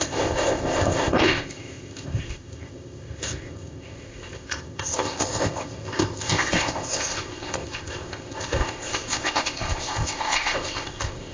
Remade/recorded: remade